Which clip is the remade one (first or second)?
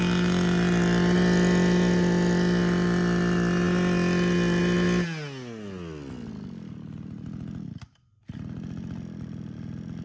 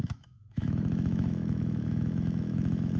second